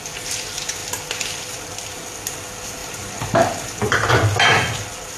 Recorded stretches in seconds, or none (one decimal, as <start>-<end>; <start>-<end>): 0.0-2.8; 4.1-5.2